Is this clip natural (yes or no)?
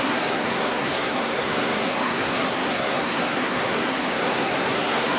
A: no